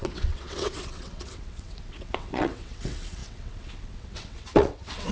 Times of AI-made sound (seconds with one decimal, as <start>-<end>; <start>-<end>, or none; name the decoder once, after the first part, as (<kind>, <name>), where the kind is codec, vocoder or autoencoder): 0.0-5.1 (vocoder, WaveNeXt)